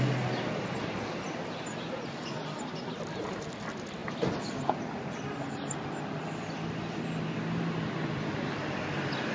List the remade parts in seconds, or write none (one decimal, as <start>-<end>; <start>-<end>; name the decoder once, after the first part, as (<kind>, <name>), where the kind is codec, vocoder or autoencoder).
none